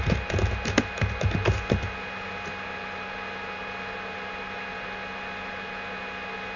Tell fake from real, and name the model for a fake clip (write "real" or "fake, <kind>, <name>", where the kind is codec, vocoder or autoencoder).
real